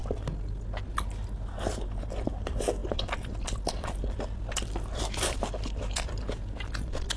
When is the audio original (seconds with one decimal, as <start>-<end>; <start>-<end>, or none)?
0.0-2.8